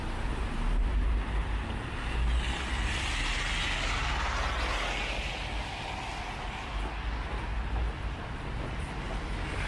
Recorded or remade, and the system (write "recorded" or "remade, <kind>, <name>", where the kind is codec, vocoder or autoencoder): recorded